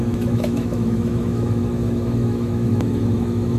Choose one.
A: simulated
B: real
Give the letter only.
A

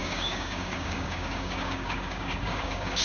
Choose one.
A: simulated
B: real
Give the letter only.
A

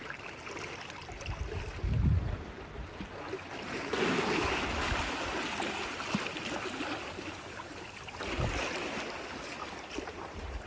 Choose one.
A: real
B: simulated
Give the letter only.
A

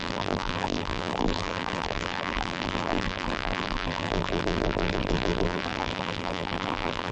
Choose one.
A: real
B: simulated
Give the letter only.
B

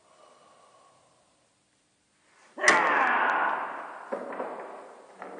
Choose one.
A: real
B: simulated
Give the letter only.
A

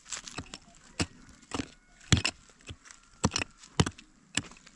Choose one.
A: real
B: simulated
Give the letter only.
A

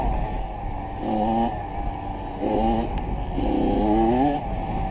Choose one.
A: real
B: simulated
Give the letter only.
A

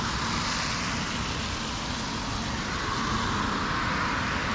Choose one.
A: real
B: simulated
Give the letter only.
A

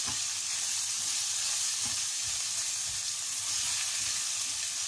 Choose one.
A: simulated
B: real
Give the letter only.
B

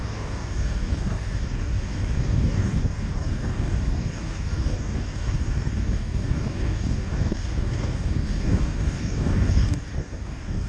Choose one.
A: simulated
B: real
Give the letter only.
A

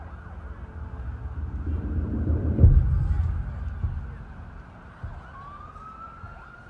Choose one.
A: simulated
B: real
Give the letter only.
B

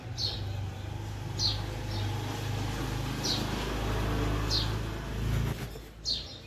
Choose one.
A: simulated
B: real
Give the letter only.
B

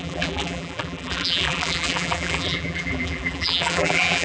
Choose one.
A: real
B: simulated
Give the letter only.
B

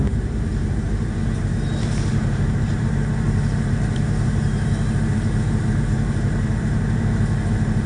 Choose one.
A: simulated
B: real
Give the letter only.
A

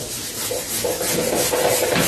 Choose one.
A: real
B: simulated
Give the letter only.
A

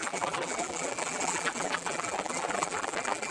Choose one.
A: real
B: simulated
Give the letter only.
B